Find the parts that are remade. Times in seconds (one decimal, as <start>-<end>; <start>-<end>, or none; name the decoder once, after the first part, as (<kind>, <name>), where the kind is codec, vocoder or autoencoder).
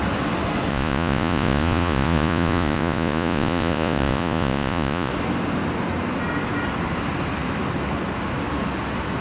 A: 0.7-5.1 (vocoder, Vocos)